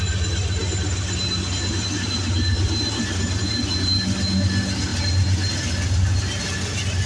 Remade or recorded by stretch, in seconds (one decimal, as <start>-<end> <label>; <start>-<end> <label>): 0.0-7.1 recorded